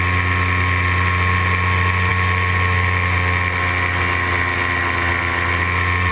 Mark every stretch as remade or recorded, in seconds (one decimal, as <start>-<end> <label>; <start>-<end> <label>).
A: 0.0-6.1 recorded